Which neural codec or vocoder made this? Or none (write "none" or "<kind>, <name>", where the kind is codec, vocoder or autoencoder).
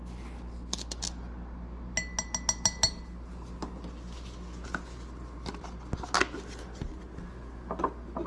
none